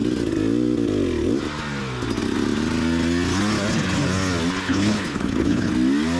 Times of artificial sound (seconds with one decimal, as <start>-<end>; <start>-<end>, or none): 4.6-5.7